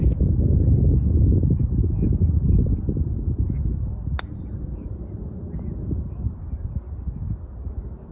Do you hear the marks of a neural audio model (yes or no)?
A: no